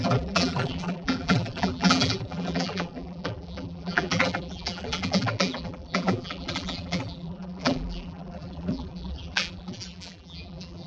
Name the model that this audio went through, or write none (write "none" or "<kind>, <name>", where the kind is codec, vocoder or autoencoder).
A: vocoder, BigVGAN v2